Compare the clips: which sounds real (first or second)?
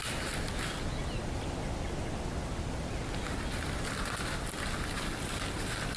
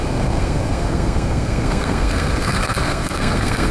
first